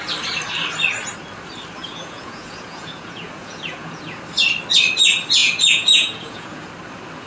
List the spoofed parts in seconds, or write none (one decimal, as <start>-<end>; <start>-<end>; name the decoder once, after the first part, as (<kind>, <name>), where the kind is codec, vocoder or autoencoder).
1.8-4.2 (vocoder, Vocos); 5.4-6.7

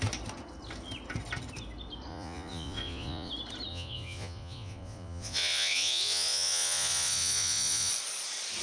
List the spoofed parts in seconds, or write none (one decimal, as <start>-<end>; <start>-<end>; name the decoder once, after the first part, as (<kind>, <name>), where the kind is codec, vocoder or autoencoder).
2.1-3.3 (vocoder, Vocos); 3.7-7.9